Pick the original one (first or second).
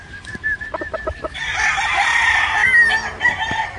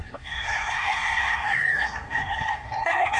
first